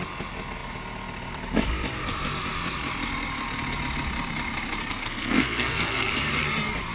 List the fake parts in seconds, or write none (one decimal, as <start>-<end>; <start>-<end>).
4.8-6.1